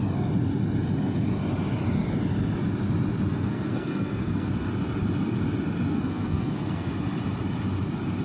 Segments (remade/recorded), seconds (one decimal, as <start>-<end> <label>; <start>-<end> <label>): 0.0-3.3 recorded; 3.3-4.5 remade; 4.5-5.9 recorded; 5.9-6.9 remade; 6.9-8.2 recorded